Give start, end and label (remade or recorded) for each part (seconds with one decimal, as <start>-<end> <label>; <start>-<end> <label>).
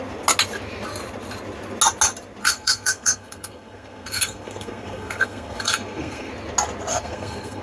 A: 0.0-2.4 recorded; 2.4-6.3 remade; 6.3-6.9 recorded; 6.9-7.6 remade